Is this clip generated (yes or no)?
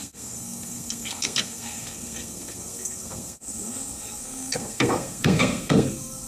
yes